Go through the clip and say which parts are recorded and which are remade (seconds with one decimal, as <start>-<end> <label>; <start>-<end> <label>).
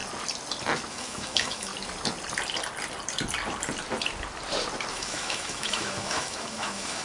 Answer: 0.0-0.9 recorded; 0.9-1.7 remade; 1.7-4.9 recorded; 4.9-7.0 remade